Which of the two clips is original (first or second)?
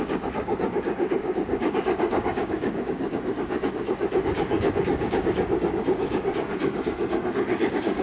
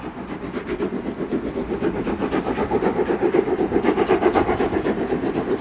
second